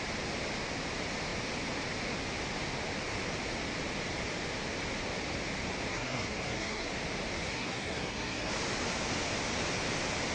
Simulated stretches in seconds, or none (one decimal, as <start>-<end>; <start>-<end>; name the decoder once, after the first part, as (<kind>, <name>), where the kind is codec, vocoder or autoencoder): 5.9-6.9 (codec, SNAC); 7.4-8.5